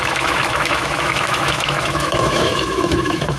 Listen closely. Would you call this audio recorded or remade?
remade